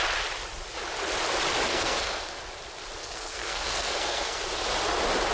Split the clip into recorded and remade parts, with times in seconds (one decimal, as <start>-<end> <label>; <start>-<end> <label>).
0.0-1.7 recorded; 1.7-2.4 remade; 2.4-3.0 recorded; 3.0-4.4 remade; 4.4-5.3 recorded